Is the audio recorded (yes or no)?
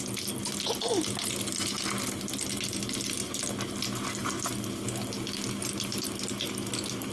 yes